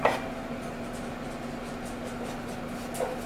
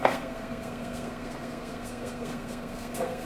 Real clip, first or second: first